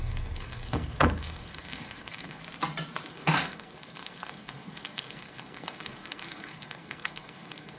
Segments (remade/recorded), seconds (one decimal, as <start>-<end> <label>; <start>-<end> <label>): 0.0-2.4 remade; 2.4-3.1 recorded; 3.1-7.8 remade